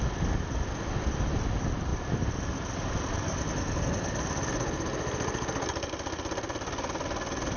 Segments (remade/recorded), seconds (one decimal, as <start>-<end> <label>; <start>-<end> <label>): 0.0-7.6 recorded